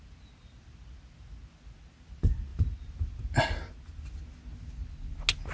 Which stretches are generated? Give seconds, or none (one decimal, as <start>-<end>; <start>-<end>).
none